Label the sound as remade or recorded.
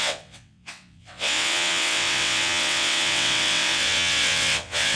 remade